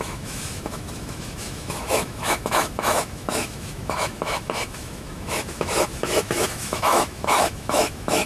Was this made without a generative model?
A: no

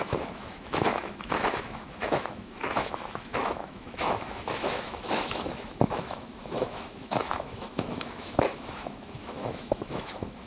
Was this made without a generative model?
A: no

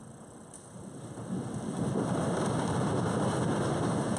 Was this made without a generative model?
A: yes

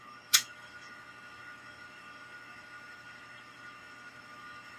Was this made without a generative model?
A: no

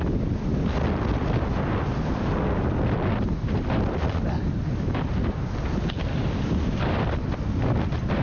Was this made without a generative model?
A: yes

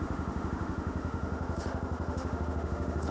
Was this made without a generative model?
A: no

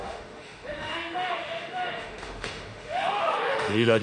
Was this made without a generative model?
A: no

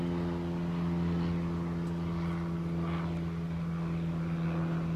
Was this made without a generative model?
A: yes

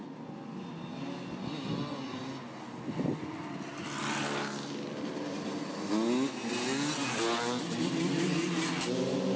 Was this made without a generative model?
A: yes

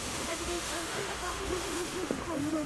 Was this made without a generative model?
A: no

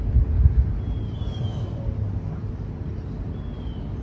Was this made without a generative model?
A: yes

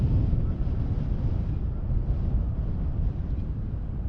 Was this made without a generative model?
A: yes